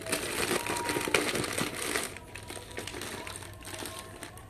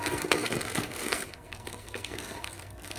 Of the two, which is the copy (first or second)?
second